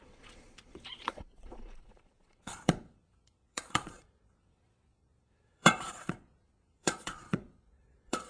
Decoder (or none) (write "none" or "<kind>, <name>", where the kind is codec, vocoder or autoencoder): vocoder, Vocos